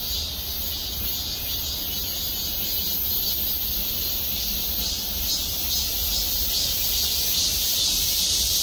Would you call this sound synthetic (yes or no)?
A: no